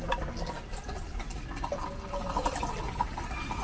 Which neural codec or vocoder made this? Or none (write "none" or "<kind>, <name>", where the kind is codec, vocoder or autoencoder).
none